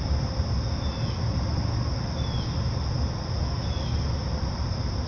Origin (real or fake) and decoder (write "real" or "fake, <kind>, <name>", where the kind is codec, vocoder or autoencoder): real